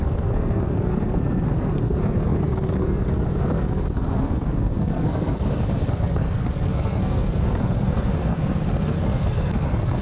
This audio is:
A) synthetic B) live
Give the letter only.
A